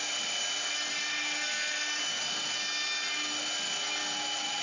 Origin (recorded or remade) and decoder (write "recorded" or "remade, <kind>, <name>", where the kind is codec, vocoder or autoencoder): recorded